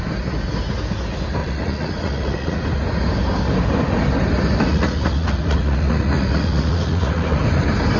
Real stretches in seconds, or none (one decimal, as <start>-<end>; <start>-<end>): 0.0-1.4; 2.6-4.7; 7.4-8.0